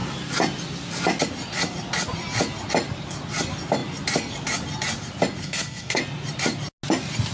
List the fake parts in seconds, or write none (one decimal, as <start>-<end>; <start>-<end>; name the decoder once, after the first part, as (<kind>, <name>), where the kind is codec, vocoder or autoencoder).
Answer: 5.4-6.0 (codec, SNAC)